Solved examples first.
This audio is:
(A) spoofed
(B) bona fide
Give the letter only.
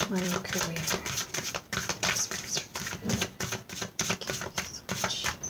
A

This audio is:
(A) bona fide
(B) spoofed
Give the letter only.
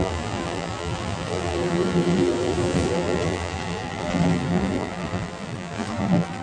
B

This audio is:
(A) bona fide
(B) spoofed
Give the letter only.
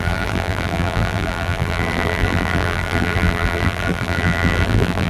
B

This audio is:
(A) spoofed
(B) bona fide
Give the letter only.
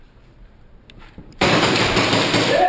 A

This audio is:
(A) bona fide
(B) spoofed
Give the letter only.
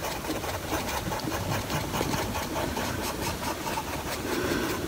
B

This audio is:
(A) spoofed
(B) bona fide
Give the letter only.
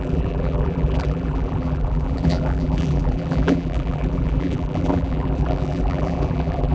A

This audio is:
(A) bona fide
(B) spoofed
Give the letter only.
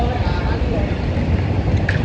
B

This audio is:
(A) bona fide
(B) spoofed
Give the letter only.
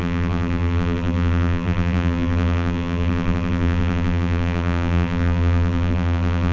B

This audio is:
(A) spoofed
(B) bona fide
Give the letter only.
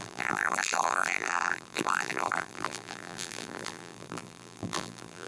A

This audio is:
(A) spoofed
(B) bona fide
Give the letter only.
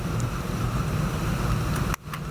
B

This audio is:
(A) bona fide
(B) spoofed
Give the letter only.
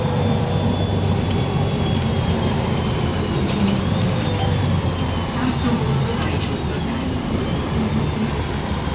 B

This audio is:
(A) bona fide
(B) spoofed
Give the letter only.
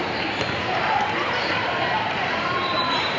B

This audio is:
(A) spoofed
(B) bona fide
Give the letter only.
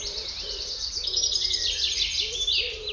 A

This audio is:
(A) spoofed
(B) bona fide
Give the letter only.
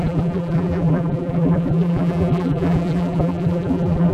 A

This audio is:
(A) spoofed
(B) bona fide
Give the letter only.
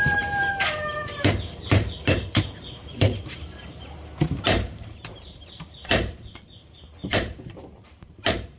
A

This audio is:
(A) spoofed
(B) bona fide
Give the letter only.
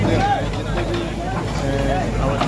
B